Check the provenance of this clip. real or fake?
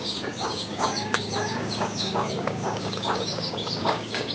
fake